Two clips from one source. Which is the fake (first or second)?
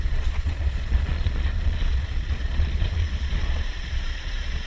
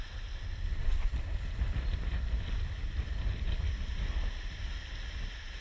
first